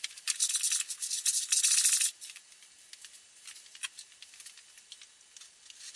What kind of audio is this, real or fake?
real